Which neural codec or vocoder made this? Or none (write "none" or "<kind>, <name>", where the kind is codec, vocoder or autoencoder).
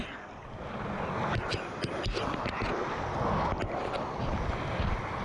none